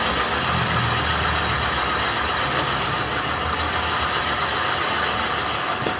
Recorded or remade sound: recorded